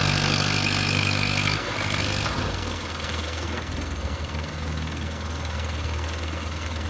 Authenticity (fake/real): fake